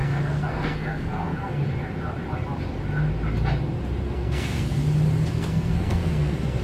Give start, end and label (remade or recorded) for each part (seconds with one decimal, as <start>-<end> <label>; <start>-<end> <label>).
0.0-1.6 remade; 1.6-4.0 recorded; 4.0-4.8 remade; 4.8-5.3 recorded; 5.3-6.6 remade